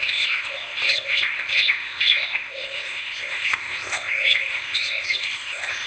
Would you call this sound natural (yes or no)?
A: no